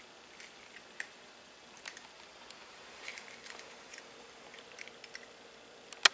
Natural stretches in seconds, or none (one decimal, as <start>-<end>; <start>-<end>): 0.0-2.6; 4.0-6.1